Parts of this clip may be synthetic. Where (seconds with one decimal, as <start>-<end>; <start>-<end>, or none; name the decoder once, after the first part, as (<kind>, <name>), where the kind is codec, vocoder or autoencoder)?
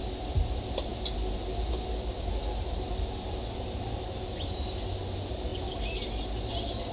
none